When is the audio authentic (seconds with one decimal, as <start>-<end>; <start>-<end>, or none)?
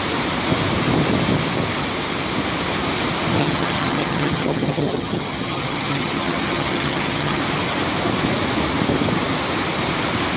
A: 0.0-3.4; 7.4-10.4